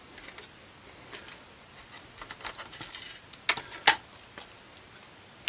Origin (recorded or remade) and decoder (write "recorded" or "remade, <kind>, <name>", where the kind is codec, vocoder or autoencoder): recorded